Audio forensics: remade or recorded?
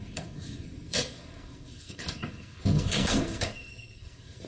remade